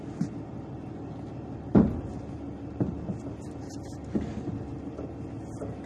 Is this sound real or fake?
real